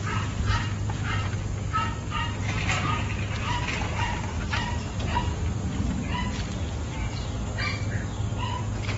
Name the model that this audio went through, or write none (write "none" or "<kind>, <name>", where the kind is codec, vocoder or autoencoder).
none